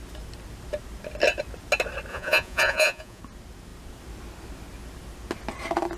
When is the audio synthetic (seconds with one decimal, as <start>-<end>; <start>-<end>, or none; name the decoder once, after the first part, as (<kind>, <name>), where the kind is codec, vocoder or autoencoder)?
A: 2.1-3.2 (vocoder, Vocos)